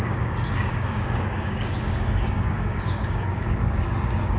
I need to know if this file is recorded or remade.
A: remade